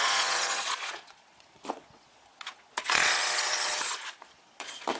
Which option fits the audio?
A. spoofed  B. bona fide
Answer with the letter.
A